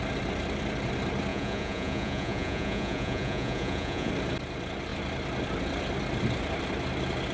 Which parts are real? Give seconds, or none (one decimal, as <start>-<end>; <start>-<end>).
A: 0.0-1.3; 4.1-7.3